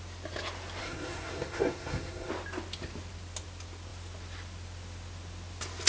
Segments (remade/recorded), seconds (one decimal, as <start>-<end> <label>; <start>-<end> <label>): 0.0-0.8 recorded; 0.8-2.3 remade; 2.3-5.9 recorded